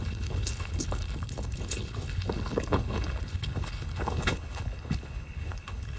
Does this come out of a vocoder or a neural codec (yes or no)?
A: yes